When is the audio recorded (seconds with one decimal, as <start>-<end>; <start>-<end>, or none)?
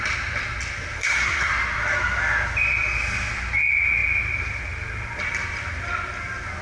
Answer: 0.0-1.0; 1.5-6.6